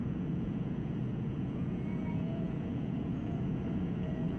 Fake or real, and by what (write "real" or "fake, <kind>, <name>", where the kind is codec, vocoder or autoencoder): fake, vocoder, Vocos